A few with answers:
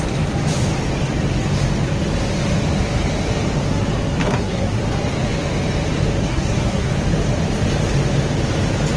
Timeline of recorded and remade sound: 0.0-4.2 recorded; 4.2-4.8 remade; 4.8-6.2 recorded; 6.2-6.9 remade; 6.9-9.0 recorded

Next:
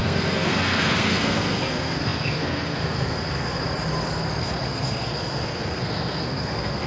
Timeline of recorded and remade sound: 0.0-3.6 remade; 3.6-4.4 recorded; 4.4-6.9 remade

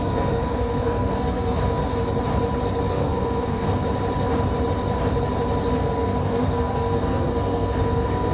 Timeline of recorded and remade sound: 0.0-1.8 remade; 1.8-2.9 recorded; 2.9-3.7 remade; 3.7-5.7 recorded; 5.7-8.3 remade